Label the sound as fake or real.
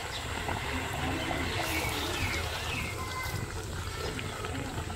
real